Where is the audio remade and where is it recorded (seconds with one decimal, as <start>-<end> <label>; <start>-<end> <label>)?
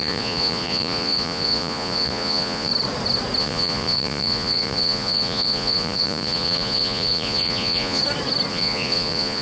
0.0-2.7 remade; 2.7-3.4 recorded; 3.4-8.0 remade; 8.0-8.5 recorded; 8.5-9.4 remade